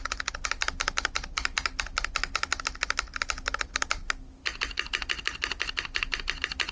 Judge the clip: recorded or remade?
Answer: recorded